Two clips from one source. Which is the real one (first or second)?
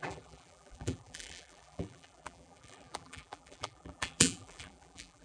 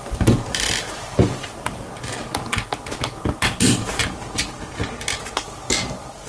second